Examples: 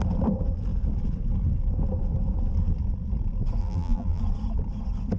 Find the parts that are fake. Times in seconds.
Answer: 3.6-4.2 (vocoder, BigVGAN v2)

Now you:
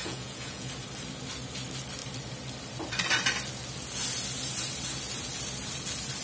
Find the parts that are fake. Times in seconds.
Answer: 0.0-0.7 (vocoder, Vocos)

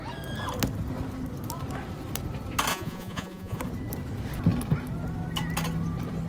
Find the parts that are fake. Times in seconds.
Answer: 2.7-3.6 (vocoder, Vocos)

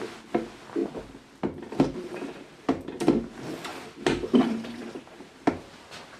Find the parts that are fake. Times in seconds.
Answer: 0.8-3.3 (vocoder, BigVGAN v2); 3.7-5.5

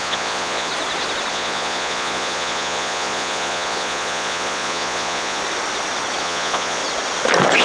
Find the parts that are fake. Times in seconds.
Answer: 0.0-0.7 (vocoder, Vocos); 1.3-5.4; 6.2-6.8

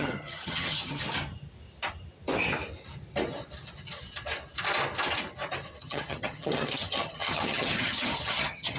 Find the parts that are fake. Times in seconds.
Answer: 0.0-1.0 (vocoder, HiFi-GAN); 5.8-8.8

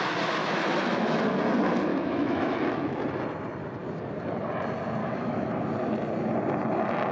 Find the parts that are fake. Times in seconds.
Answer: 0.4-1.2 (autoencoder, DAC-VAE); 1.9-3.0; 5.0-5.5